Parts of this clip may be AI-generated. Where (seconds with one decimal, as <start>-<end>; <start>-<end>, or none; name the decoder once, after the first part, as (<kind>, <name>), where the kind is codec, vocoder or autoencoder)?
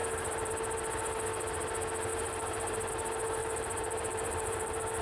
0.0-0.5 (vocoder, BigVGAN v2); 2.1-2.9; 3.4-5.0